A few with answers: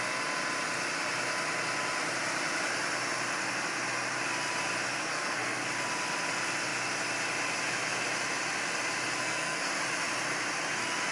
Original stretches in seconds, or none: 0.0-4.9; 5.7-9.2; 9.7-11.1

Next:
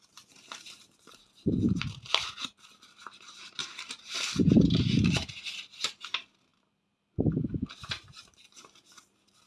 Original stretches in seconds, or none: none

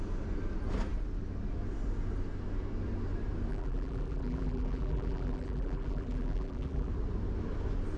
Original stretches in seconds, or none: 0.0-3.5; 6.9-8.0

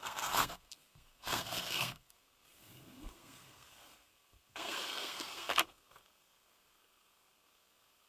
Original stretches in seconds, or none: none

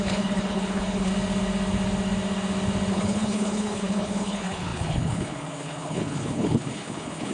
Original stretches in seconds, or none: 1.1-2.9

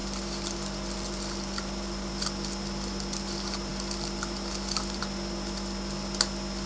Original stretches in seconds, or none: 2.1-6.7

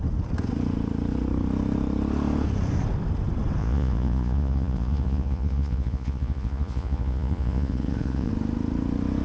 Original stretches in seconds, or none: 0.0-3.6; 8.3-9.2

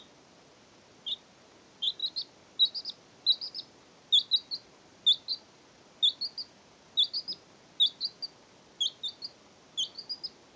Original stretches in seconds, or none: 0.0-10.6